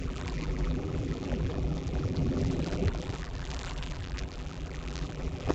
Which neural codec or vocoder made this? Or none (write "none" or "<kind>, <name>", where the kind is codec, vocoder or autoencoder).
vocoder, BigVGAN v2